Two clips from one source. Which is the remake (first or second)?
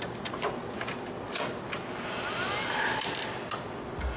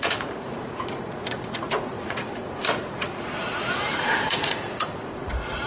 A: second